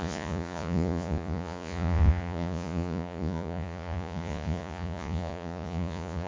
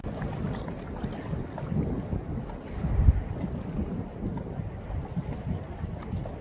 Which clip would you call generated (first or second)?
first